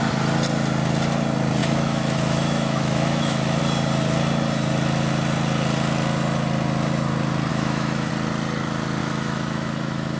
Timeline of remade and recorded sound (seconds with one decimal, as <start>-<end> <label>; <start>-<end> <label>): 0.0-1.6 recorded; 1.6-3.6 remade; 3.6-7.5 recorded; 7.5-8.1 remade; 8.1-9.0 recorded; 9.0-10.2 remade